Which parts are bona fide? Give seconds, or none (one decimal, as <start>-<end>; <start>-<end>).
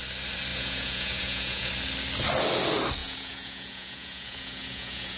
0.0-0.5; 1.7-3.0